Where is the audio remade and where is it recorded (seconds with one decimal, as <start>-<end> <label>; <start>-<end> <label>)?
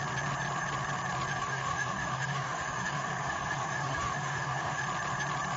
0.0-1.4 recorded; 1.4-4.8 remade; 4.8-5.6 recorded